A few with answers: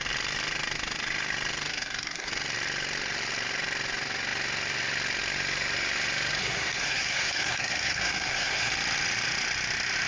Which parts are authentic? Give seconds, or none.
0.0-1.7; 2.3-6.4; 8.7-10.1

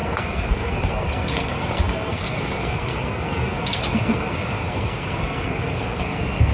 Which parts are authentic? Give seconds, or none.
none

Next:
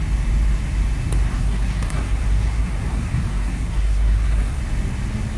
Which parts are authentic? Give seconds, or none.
0.0-1.4; 4.6-5.4

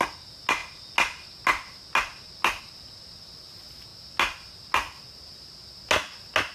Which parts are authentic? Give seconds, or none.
0.0-6.5